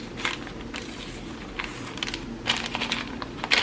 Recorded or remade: recorded